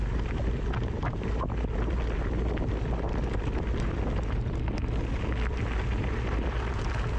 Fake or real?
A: real